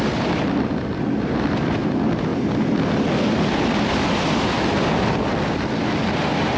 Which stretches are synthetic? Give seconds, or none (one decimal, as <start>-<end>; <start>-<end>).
2.3-3.1